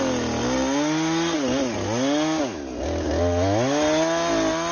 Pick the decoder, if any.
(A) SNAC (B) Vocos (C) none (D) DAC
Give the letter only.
C